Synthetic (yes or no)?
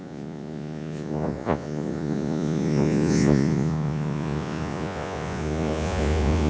yes